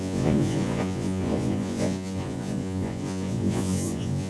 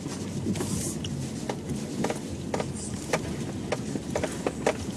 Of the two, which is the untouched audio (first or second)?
second